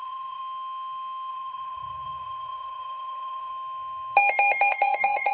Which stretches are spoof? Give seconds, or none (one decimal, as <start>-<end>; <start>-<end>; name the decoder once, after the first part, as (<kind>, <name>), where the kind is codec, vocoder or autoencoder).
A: 0.0-0.4 (vocoder, Vocos); 1.3-3.5; 4.7-5.3